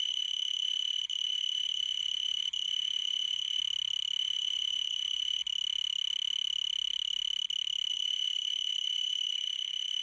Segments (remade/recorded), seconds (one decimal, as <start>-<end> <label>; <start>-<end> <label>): 0.0-3.6 remade; 3.6-4.2 recorded; 4.2-5.4 remade; 5.4-7.9 recorded; 7.9-10.0 remade